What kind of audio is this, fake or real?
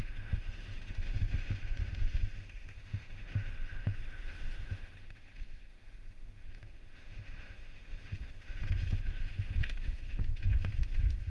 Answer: fake